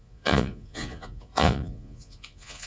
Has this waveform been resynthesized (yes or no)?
yes